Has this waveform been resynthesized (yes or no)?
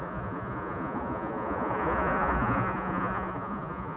yes